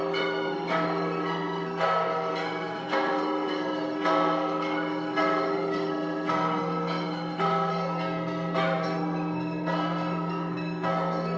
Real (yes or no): no